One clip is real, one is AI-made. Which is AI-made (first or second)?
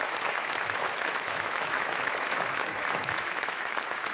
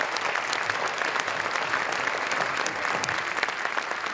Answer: first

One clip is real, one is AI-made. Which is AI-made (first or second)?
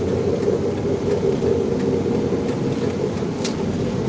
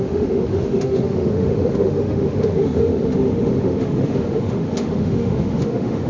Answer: second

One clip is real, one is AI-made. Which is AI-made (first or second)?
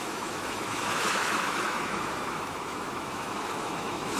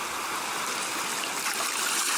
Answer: first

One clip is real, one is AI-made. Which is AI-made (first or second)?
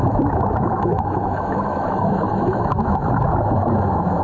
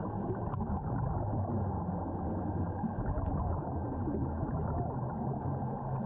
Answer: first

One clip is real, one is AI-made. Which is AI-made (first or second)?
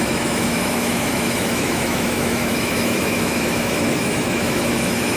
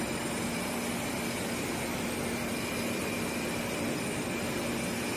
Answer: first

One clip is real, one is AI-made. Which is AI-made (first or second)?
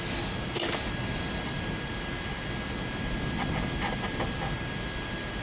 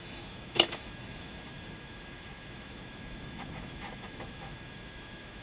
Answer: second